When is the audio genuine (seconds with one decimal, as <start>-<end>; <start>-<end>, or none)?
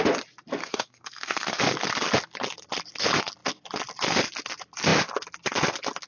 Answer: 0.0-0.6; 1.6-6.1